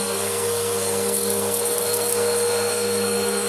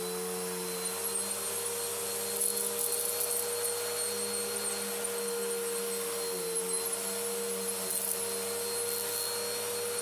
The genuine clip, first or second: second